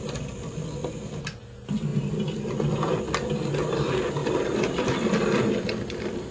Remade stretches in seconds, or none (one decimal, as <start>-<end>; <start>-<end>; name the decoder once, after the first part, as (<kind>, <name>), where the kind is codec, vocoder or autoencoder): 4.2-6.3 (vocoder, BigVGAN v2)